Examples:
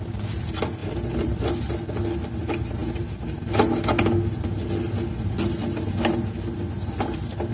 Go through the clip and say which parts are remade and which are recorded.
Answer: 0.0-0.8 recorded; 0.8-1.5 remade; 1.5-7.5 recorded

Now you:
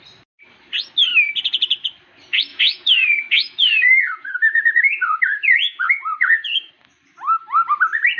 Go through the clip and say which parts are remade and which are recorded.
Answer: 0.0-2.5 recorded; 2.5-6.7 remade; 6.7-8.2 recorded

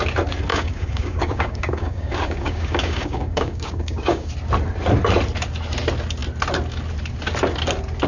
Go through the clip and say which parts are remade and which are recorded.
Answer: 0.0-0.5 recorded; 0.5-4.3 remade; 4.3-8.1 recorded

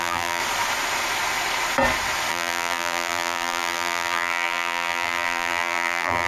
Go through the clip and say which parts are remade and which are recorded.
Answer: 0.0-0.4 remade; 0.4-2.3 recorded; 2.3-6.3 remade

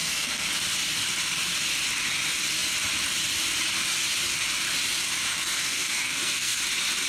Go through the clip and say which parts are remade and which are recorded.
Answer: 0.0-0.5 remade; 0.5-5.3 recorded; 5.3-6.6 remade; 6.6-7.1 recorded

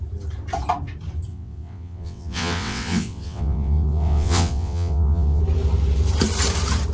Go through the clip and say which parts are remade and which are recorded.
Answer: 0.0-1.3 recorded; 1.3-5.4 remade; 5.4-6.9 recorded

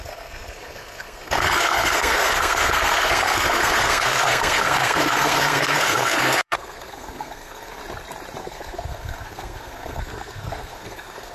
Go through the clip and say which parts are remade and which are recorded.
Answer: 0.0-7.8 remade; 7.8-8.4 recorded; 8.4-11.3 remade

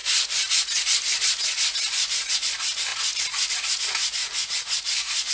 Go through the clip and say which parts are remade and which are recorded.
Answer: 0.0-5.3 recorded